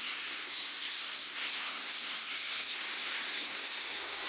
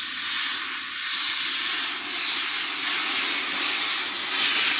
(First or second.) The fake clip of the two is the first